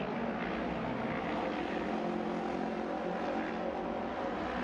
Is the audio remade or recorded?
recorded